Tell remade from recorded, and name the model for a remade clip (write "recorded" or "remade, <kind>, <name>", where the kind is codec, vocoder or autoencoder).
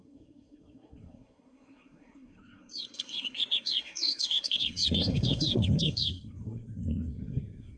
remade, codec, SNAC